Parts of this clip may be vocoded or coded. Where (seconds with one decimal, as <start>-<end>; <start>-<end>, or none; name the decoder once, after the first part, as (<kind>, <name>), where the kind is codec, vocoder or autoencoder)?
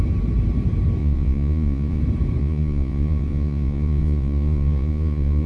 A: 1.0-2.0 (vocoder, Vocos); 2.4-5.5